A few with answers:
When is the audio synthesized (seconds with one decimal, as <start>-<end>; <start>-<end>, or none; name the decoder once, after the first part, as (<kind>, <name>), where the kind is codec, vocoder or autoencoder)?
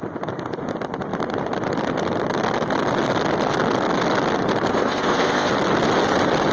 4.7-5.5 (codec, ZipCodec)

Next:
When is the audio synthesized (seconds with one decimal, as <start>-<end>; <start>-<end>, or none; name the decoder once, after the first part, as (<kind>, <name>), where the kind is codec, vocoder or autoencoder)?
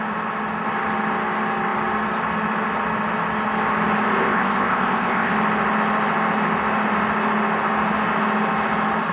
4.2-5.3 (codec, ZipCodec)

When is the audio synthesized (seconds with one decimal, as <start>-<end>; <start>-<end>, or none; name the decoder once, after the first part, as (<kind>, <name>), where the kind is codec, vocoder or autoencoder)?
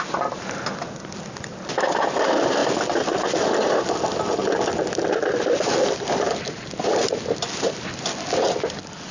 none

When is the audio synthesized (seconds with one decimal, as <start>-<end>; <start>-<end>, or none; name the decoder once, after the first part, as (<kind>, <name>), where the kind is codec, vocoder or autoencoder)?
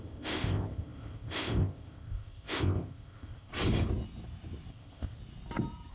0.0-3.5 (codec, ZipCodec); 4.7-5.2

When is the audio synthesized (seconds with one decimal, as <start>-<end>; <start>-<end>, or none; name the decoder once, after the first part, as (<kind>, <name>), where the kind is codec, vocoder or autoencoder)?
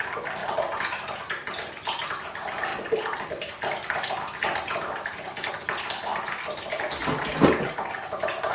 none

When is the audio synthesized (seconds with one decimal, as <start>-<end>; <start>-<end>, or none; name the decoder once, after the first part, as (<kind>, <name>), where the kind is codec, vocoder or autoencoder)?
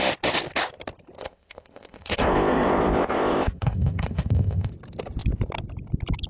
1.2-4.7 (codec, ZipCodec)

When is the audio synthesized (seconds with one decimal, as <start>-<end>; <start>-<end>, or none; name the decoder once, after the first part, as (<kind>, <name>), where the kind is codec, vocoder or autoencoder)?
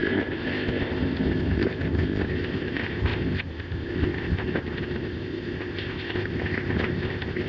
0.0-7.5 (codec, ZipCodec)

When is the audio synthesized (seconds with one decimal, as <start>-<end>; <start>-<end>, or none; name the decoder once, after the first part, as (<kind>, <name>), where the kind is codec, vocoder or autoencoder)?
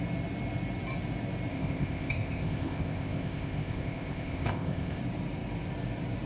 1.5-5.0 (codec, ZipCodec)